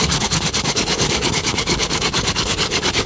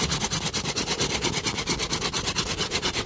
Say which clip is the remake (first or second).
first